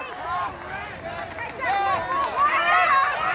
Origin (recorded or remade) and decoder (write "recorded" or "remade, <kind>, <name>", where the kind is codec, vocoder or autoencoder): recorded